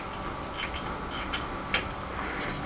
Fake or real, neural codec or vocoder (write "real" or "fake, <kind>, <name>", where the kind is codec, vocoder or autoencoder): real